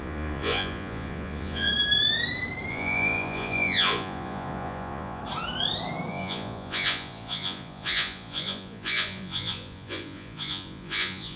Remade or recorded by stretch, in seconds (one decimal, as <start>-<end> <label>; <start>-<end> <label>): 0.0-1.7 remade; 1.7-2.7 recorded; 2.7-5.2 remade; 5.2-6.1 recorded; 6.1-11.4 remade